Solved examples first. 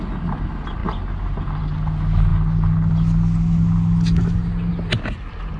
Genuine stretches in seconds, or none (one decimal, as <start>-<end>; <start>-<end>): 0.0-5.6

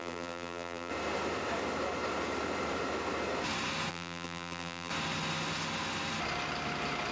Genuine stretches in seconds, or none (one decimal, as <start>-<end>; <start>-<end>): 0.9-3.9; 4.9-7.1

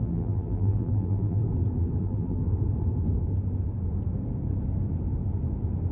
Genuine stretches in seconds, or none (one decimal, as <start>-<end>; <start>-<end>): 1.4-2.0; 2.4-5.9